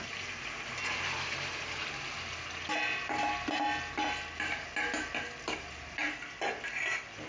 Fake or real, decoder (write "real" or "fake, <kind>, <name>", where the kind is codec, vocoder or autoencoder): real